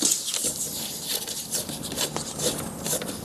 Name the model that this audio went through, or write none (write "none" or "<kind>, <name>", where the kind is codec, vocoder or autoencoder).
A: none